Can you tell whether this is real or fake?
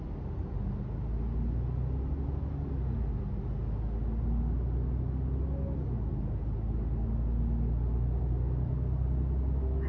real